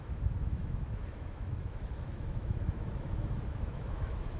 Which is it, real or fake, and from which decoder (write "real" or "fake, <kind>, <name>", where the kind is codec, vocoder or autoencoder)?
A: fake, autoencoder, DAC-VAE